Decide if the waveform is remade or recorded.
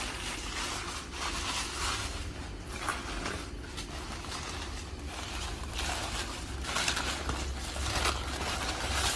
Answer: recorded